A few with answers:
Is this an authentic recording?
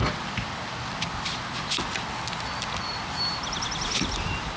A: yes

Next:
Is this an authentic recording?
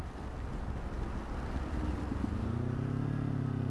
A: yes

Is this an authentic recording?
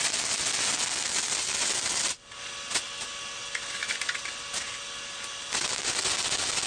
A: yes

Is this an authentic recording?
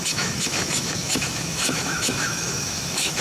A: no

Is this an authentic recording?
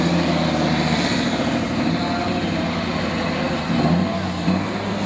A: yes